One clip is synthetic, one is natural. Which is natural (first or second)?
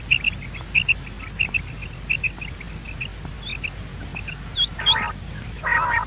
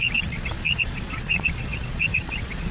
first